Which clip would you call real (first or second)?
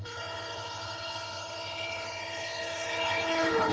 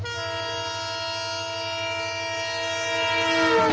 second